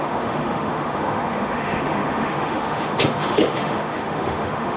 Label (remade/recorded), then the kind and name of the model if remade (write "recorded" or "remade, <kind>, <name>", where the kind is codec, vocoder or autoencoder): remade, autoencoder, DAC-VAE